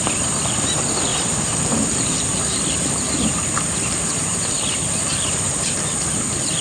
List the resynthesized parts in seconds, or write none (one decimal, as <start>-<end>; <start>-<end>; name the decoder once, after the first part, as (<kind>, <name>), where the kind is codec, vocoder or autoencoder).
1.1-1.9 (vocoder, BigVGAN v2)